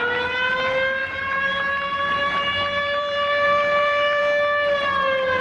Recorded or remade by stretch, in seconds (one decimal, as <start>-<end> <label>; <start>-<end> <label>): 0.0-1.0 recorded; 1.0-4.2 remade; 4.2-5.4 recorded